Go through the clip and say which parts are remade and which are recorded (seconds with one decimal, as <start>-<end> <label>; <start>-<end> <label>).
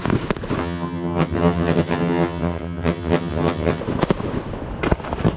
0.0-0.6 recorded; 0.6-3.8 remade; 3.8-5.4 recorded